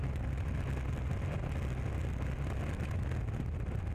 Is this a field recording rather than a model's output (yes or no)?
yes